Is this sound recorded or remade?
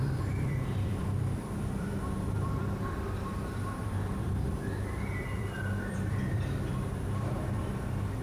remade